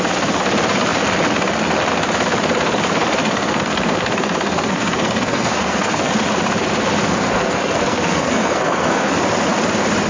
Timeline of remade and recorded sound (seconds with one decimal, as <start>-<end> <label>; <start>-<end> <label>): 0.0-3.2 recorded; 3.2-6.1 remade; 6.1-7.0 recorded; 7.0-9.1 remade; 9.1-10.1 recorded